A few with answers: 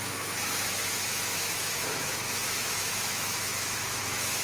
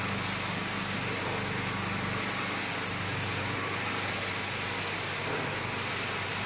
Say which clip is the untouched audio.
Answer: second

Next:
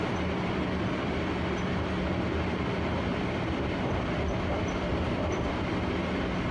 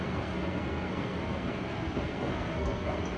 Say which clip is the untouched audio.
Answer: first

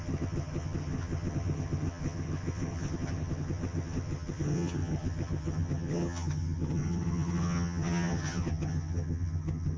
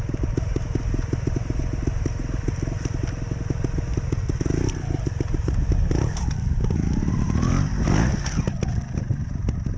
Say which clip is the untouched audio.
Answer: second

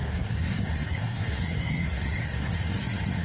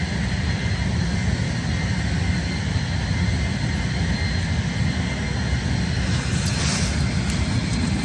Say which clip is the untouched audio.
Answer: second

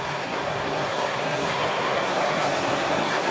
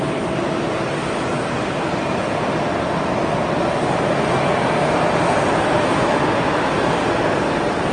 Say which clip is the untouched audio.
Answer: second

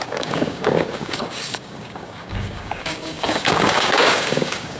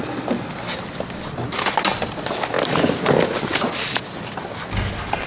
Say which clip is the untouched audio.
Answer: second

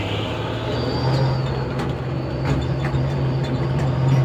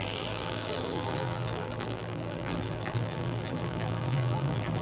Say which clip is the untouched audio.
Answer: first